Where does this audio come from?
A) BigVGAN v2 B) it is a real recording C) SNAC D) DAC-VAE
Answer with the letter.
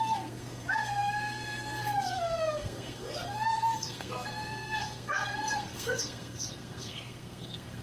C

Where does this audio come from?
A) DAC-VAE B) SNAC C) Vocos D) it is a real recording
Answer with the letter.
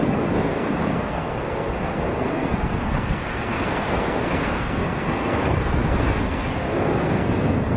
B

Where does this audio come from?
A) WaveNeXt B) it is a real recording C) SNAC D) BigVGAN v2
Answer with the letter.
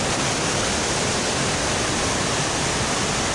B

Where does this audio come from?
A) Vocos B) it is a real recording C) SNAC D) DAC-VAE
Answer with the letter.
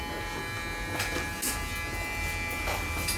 B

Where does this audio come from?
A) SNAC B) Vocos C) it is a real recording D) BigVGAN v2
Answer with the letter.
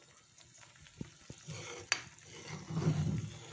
C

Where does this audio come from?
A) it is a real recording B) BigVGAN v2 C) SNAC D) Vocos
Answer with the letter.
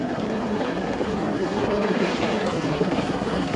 C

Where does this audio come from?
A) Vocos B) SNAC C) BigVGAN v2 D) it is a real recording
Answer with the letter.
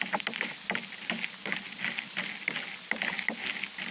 D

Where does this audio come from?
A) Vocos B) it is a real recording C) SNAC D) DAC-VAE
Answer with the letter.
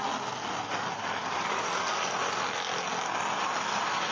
B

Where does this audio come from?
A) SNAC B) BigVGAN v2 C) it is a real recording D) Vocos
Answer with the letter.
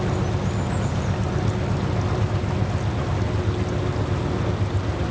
C